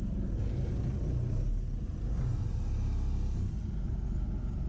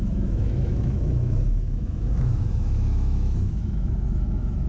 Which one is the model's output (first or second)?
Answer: second